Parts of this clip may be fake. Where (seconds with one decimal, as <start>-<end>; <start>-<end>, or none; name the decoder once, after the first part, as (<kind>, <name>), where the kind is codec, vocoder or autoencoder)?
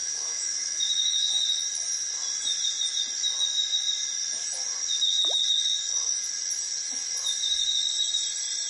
0.0-1.3 (autoencoder, DAC-VAE)